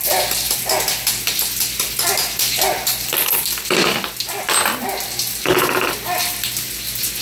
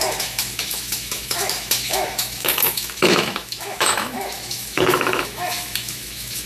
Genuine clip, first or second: first